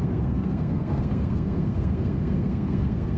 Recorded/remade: remade